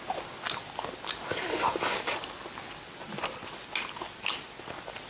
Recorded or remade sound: recorded